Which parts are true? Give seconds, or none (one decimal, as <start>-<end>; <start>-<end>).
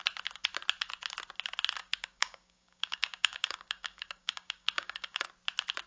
0.0-1.8; 5.3-5.9